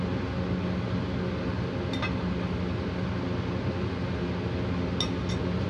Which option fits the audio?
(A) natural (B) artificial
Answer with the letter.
A